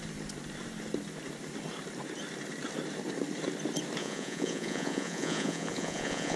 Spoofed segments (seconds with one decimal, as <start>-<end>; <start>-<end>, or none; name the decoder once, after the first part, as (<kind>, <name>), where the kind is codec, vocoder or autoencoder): 4.0-6.4 (vocoder, Vocos)